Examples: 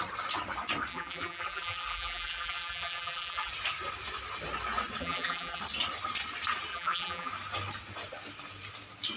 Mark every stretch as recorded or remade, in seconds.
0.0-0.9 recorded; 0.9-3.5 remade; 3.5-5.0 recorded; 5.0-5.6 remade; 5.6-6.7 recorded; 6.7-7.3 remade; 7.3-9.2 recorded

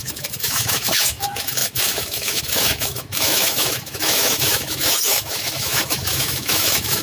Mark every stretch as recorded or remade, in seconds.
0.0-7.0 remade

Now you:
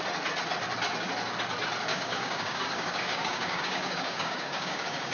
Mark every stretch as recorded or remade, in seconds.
0.0-1.9 recorded; 1.9-5.1 remade

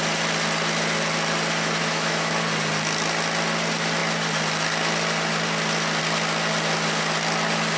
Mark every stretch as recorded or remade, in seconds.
0.0-1.8 recorded; 1.8-2.3 remade; 2.3-7.8 recorded

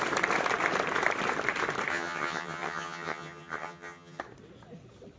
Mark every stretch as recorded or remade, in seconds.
0.0-1.9 recorded; 1.9-4.2 remade; 4.2-5.2 recorded

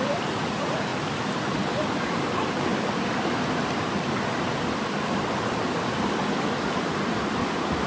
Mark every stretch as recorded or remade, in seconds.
0.0-7.9 recorded

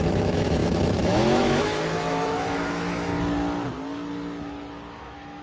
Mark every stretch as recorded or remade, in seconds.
0.0-3.1 remade; 3.1-4.9 recorded; 4.9-5.4 remade

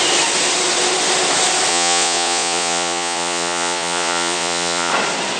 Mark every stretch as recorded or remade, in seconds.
0.0-1.7 recorded; 1.7-4.9 remade; 4.9-5.4 recorded